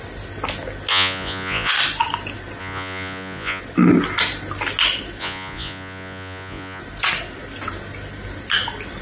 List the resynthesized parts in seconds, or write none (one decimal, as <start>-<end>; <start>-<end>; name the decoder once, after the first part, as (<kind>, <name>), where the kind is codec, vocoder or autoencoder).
0.9-1.7 (vocoder, Vocos); 2.6-3.6; 5.2-6.8